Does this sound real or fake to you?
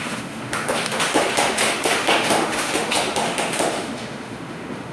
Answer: fake